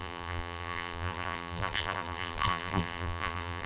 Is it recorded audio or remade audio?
remade